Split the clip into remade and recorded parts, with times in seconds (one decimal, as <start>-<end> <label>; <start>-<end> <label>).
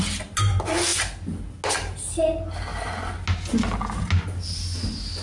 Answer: 0.0-5.2 recorded